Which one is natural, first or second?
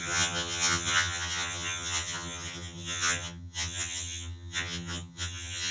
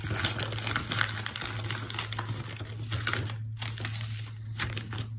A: second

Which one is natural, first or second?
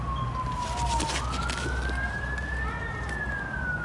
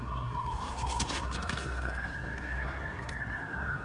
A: first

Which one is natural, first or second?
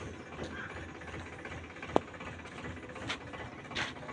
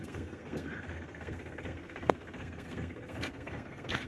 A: first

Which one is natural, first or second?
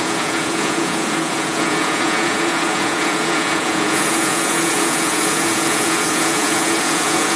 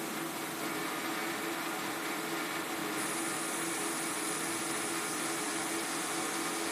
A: second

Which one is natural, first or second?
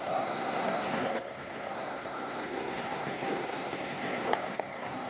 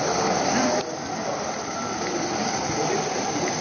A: second